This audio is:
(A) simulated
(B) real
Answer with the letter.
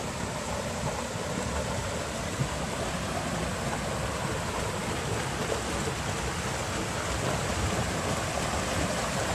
B